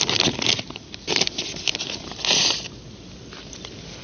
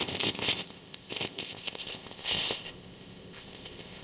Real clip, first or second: first